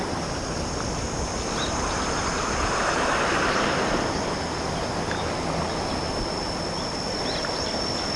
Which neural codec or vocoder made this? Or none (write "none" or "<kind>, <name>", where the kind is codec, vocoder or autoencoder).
none